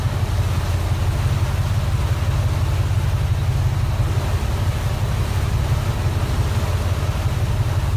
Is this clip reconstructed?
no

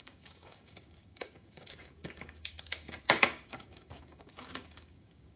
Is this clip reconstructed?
yes